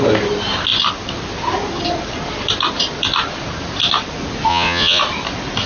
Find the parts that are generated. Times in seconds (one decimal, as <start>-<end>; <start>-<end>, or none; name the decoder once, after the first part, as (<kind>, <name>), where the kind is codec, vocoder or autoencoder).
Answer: 4.5-5.0 (vocoder, Vocos)